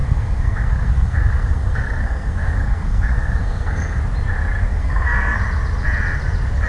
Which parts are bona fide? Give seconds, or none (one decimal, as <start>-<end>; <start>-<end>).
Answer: 4.0-4.7; 5.4-6.7